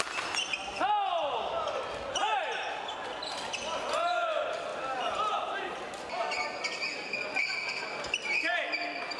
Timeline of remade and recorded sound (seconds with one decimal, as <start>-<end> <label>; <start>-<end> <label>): 0.0-9.2 recorded